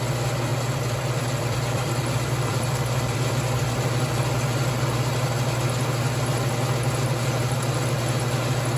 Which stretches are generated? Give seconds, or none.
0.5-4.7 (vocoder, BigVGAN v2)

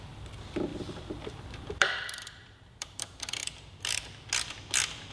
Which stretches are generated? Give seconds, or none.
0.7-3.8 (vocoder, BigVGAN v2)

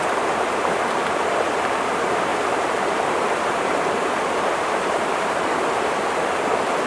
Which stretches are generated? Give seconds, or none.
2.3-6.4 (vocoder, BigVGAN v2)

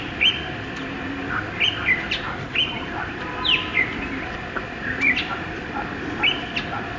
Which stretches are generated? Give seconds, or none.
none

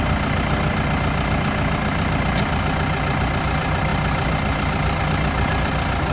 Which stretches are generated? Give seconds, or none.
none